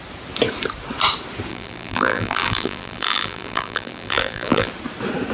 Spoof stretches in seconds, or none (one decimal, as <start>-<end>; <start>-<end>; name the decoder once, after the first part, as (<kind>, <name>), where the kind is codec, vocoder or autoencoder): 1.5-4.7 (vocoder, BigVGAN v2)